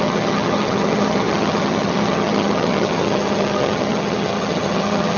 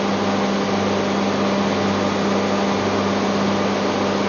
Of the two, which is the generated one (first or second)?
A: first